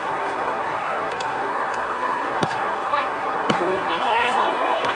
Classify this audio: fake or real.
fake